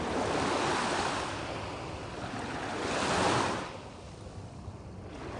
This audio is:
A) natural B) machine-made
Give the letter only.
A